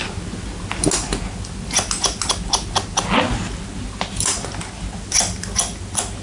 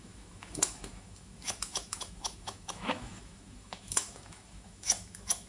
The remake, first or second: second